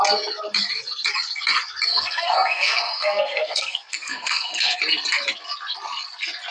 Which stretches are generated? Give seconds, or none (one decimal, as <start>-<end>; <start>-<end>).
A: 1.9-4.8

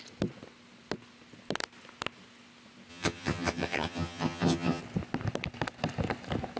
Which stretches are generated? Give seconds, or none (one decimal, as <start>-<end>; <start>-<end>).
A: 2.9-4.8

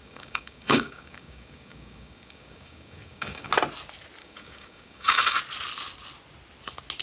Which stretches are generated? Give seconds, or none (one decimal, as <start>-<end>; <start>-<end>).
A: 0.0-3.5; 4.2-5.4

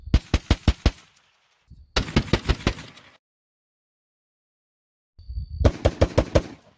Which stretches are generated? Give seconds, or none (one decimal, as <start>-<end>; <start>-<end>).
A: none

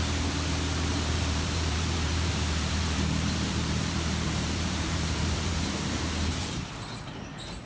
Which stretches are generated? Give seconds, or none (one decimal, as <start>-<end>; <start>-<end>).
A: 0.9-5.5

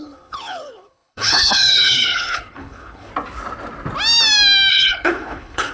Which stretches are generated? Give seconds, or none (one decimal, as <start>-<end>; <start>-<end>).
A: 0.0-3.1; 4.7-5.7